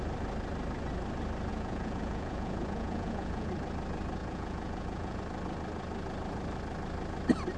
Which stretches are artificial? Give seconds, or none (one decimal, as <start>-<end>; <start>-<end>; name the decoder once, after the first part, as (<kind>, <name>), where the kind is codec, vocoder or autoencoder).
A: 1.5-3.5 (vocoder, Vocos); 4.2-5.2